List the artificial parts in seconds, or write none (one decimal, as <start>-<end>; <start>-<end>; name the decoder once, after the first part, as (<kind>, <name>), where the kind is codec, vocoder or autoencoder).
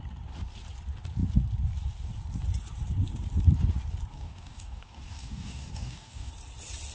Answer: 4.1-6.3 (codec, DAC)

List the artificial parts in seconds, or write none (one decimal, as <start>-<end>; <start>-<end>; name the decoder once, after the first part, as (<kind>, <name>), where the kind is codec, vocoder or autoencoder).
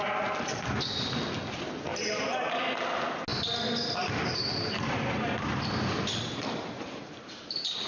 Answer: 1.9-2.6 (vocoder, BigVGAN v2); 3.3-7.9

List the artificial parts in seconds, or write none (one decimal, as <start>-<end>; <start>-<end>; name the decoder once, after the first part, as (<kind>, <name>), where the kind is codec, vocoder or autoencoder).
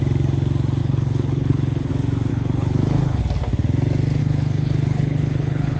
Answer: 0.8-1.9 (codec, HILCodec); 2.3-3.2; 4.2-5.8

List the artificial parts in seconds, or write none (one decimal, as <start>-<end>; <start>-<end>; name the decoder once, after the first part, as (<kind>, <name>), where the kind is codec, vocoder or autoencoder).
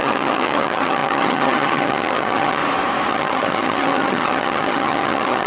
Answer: 0.0-2.6 (vocoder, HiFi-GAN); 3.1-5.5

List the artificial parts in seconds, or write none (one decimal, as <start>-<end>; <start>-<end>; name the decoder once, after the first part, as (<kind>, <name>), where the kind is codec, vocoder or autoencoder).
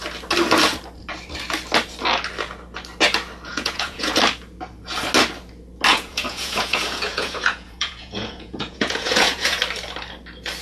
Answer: 3.5-4.1 (vocoder, Vocos); 5.9-9.6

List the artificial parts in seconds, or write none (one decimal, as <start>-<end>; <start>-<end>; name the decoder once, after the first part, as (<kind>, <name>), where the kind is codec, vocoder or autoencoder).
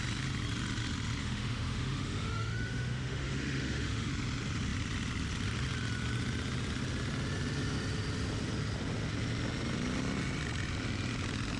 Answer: 1.2-4.1 (autoencoder, DAC-VAE)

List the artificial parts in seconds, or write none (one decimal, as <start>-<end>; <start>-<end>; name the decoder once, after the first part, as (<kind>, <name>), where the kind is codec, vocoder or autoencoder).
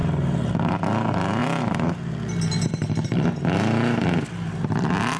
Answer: 0.0-0.5 (vocoder, BigVGAN v2)